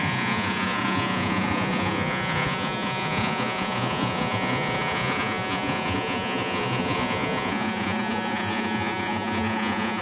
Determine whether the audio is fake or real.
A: fake